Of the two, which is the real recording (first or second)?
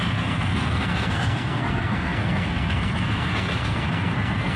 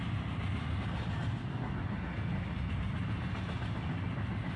second